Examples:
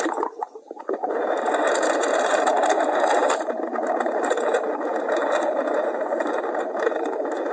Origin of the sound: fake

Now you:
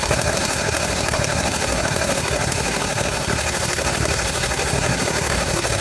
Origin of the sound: fake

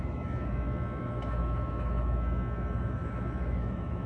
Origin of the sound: fake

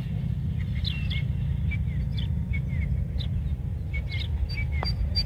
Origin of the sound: real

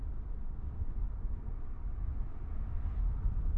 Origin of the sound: real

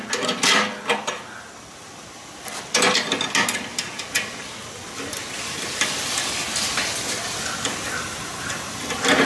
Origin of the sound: real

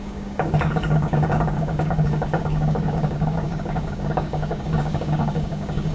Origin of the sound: fake